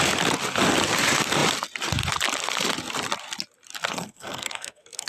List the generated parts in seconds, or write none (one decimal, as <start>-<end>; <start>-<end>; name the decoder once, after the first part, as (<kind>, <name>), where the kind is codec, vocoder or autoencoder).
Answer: 3.9-5.1 (codec, SNAC)